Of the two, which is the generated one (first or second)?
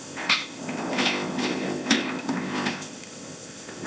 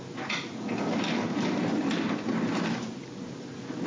first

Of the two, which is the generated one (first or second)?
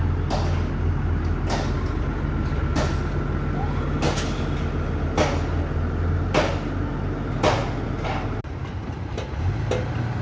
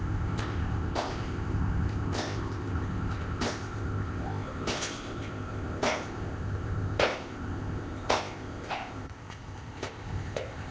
second